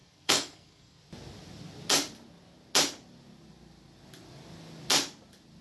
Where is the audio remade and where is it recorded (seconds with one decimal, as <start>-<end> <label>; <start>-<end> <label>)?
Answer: 0.0-1.0 remade; 1.0-5.6 recorded